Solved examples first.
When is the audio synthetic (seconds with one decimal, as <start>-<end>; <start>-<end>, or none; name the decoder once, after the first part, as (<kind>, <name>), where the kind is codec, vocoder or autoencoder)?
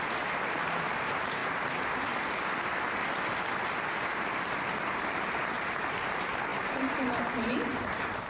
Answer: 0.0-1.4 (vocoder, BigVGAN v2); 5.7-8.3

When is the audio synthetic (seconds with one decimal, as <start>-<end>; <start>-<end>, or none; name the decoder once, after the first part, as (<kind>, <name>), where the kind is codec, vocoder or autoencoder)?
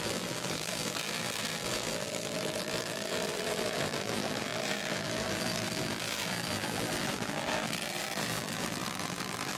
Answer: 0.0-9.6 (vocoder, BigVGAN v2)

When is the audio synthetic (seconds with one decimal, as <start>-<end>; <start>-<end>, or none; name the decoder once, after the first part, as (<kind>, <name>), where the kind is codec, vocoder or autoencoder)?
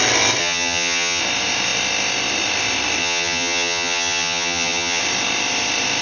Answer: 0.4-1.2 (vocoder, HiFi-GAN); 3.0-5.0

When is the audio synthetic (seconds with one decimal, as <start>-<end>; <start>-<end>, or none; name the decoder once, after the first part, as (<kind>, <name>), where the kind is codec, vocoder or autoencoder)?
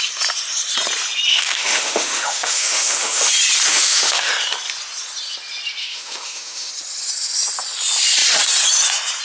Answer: 1.3-3.3 (autoencoder, DAC-VAE); 3.7-4.3; 5.8-6.7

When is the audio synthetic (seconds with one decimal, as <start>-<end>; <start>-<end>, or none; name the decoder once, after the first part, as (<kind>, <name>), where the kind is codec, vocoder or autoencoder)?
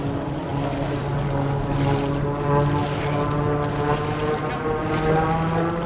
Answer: none